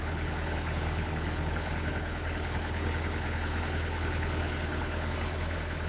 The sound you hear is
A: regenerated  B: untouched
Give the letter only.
A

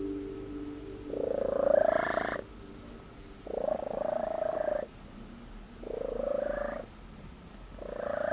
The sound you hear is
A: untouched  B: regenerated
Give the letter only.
A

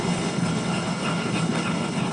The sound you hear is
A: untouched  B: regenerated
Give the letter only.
B